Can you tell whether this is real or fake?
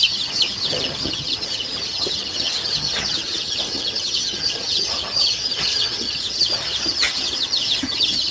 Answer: fake